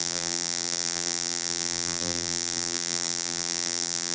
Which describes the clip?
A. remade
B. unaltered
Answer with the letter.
A